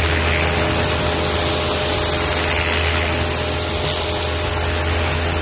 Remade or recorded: recorded